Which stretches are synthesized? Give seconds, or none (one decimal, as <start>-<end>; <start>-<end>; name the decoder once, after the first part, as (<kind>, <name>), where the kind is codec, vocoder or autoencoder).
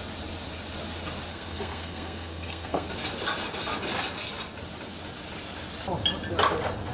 1.3-2.9 (codec, SNAC)